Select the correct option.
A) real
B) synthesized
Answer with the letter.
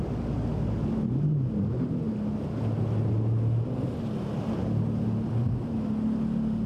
A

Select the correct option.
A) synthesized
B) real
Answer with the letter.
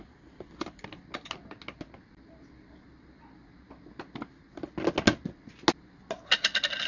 B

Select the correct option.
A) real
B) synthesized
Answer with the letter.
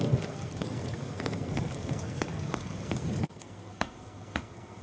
B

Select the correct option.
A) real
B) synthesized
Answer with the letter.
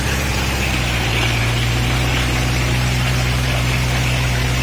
B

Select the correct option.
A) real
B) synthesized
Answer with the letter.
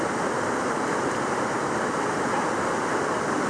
A